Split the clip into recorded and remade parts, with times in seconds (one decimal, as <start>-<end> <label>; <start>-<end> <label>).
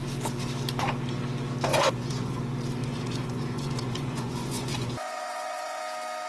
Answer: 0.0-1.7 recorded; 1.7-2.4 remade; 2.4-2.8 recorded; 2.8-5.8 remade; 5.8-6.3 recorded